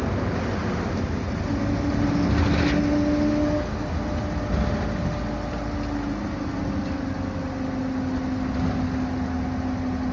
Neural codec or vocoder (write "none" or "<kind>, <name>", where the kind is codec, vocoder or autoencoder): none